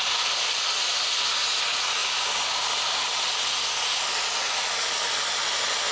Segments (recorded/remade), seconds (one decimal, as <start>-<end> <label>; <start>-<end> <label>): 0.0-5.9 recorded